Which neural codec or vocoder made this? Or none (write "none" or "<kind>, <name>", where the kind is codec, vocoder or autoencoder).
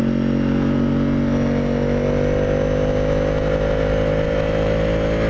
none